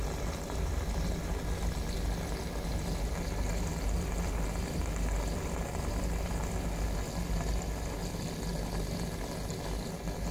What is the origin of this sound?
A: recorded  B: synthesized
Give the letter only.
A